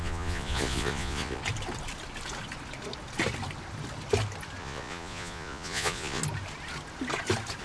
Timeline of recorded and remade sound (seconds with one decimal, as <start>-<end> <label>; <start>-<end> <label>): 0.0-1.4 remade; 1.4-4.6 recorded; 4.6-6.2 remade; 6.2-7.6 recorded